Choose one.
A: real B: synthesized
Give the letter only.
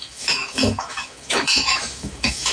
B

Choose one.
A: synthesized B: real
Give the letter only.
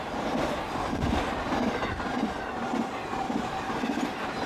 B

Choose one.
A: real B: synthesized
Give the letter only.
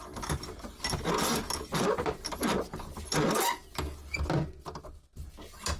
A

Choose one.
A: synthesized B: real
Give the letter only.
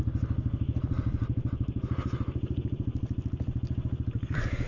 B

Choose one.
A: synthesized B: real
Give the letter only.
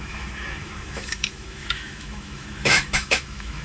A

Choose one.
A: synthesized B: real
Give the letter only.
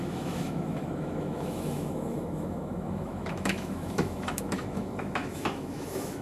A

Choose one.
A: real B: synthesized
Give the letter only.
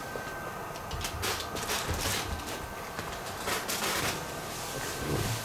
A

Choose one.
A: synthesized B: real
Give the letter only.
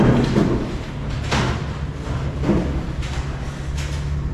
B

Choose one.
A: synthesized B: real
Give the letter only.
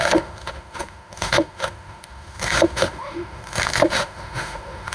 A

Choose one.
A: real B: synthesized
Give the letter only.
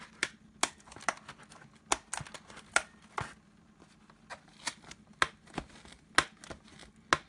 A